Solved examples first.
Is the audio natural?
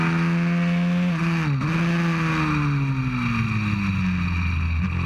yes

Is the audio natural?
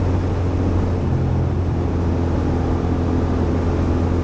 yes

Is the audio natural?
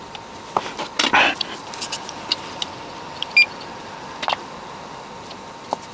yes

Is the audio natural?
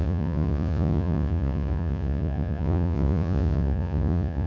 no